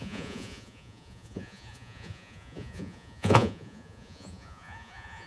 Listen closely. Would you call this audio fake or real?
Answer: fake